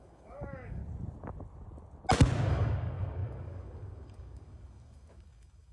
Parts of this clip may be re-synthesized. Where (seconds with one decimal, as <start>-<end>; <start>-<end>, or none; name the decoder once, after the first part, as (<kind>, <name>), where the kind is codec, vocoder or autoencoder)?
0.0-0.8 (codec, DAC); 2.5-5.7